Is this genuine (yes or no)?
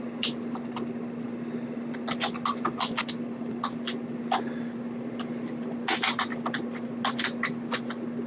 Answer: yes